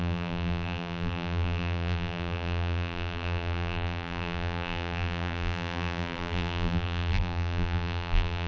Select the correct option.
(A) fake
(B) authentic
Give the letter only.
A